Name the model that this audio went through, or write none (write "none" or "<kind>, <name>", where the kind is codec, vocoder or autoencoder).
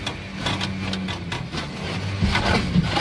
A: none